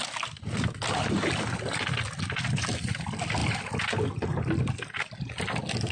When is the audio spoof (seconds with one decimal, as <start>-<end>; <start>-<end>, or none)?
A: none